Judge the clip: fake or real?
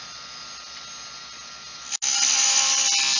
real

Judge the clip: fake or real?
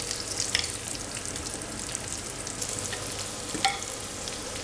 real